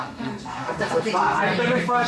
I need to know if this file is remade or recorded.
remade